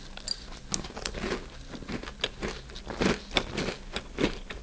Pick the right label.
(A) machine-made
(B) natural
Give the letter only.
B